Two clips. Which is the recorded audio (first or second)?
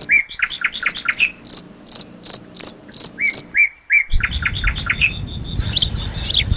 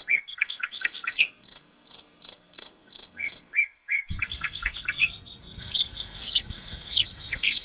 first